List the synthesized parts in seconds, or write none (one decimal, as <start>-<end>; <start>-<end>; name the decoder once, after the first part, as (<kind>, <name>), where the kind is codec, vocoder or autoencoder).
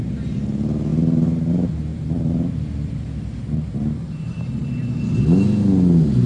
0.9-1.5 (vocoder, BigVGAN v2); 1.9-4.6